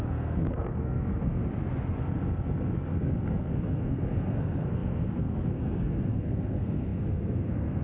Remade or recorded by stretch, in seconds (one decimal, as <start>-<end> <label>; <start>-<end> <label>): 0.0-1.4 remade; 1.4-3.0 recorded; 3.0-7.8 remade